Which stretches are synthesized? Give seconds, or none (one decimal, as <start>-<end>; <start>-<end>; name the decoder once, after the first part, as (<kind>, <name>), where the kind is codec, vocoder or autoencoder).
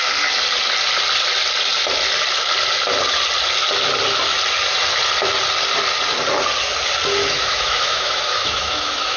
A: 7.2-9.2 (autoencoder, DAC-VAE)